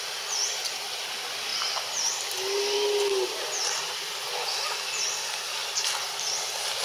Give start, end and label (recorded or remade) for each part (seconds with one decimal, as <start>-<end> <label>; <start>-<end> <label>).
0.0-6.8 recorded